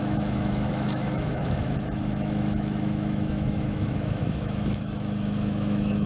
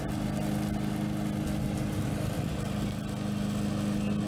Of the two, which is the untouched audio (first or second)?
second